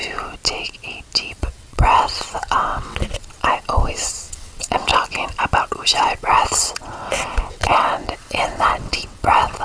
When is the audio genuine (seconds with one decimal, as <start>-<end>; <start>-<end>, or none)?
0.0-1.3; 4.9-5.6